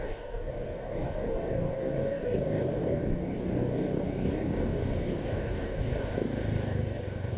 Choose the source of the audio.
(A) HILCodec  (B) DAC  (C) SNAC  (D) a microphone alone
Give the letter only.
B